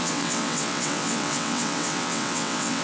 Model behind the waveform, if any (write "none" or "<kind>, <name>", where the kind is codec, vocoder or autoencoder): vocoder, WaveNeXt